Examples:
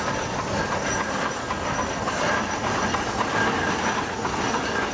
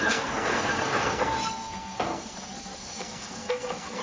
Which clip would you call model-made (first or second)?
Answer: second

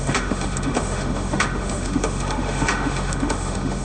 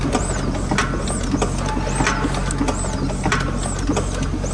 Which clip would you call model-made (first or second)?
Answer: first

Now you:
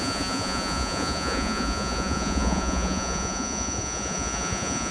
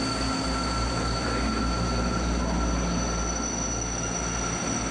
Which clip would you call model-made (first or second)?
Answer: first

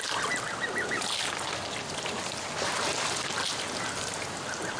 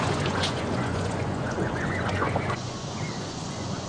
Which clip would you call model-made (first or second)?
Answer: second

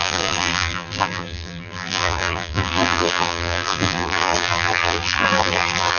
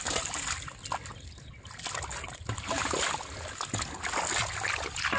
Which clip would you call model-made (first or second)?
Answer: first